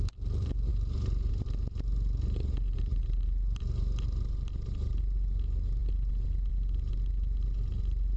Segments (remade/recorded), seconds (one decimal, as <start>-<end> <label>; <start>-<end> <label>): 0.0-8.2 recorded